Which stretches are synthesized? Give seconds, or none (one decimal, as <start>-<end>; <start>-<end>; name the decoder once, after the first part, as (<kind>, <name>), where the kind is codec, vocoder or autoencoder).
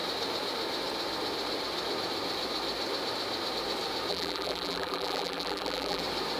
4.1-6.0 (vocoder, BigVGAN v2)